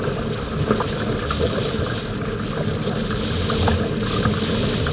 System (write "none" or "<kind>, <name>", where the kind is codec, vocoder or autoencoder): none